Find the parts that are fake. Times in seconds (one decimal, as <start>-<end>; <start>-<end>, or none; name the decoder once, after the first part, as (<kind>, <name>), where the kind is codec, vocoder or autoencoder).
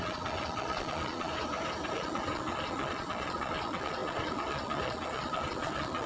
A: 0.0-1.3 (vocoder, Vocos); 1.9-6.1